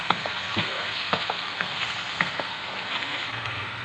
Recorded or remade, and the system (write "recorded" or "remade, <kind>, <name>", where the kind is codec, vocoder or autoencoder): remade, codec, SNAC